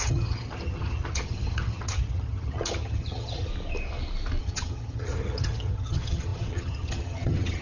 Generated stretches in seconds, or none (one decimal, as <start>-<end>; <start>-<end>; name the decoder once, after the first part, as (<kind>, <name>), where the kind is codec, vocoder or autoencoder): 0.0-3.5 (vocoder, HiFi-GAN); 4.4-7.6